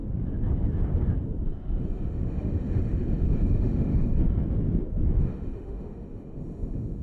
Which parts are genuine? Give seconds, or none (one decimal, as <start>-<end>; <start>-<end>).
0.0-1.8; 4.2-5.2